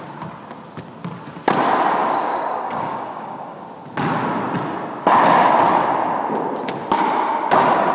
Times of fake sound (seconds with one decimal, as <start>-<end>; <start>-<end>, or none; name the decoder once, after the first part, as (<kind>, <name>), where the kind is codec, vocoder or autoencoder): 2.0-3.6 (codec, DAC)